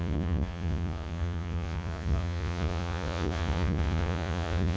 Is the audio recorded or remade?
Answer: remade